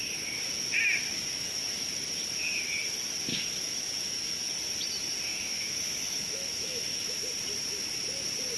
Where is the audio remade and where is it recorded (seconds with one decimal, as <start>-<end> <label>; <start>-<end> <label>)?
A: 0.0-1.1 recorded; 1.1-1.9 remade; 1.9-3.3 recorded; 3.3-4.5 remade; 4.5-5.3 recorded; 5.3-7.2 remade; 7.2-8.6 recorded